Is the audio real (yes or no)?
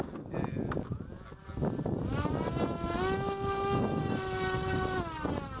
yes